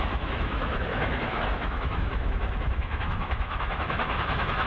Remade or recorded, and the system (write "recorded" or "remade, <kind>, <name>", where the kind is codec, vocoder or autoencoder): remade, autoencoder, DAC-VAE